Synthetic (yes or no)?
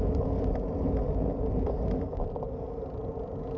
no